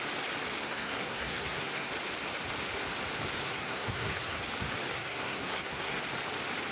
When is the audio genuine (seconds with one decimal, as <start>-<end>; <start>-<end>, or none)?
0.0-0.6; 1.9-3.4; 4.4-4.9; 6.0-6.7